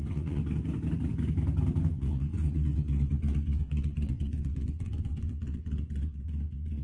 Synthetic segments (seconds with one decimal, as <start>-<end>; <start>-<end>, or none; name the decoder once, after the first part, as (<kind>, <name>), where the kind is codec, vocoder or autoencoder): 0.0-0.4 (vocoder, WaveNeXt); 1.9-6.8